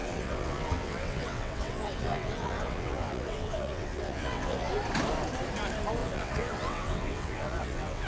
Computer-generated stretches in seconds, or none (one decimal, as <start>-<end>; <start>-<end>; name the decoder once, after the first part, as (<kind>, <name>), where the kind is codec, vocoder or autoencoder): 0.0-4.7 (vocoder, WaveNeXt); 6.0-8.1